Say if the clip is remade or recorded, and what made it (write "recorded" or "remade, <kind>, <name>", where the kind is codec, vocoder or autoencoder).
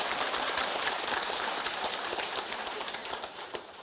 remade, vocoder, BigVGAN v2